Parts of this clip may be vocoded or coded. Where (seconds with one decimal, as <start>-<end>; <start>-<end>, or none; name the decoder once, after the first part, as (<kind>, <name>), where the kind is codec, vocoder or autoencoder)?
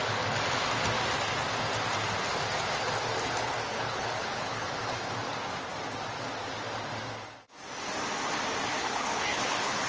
3.7-4.7 (codec, HILCodec); 8.8-9.9